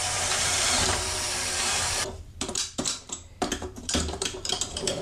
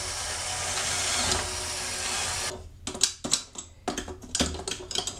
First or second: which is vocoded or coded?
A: first